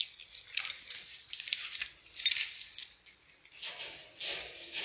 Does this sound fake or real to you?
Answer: real